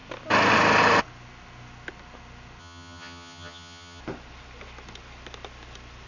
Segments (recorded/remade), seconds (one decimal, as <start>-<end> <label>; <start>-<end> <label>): 0.0-2.6 recorded; 2.6-4.0 remade; 4.0-6.1 recorded